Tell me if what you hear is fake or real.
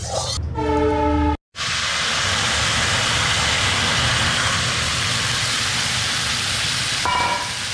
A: real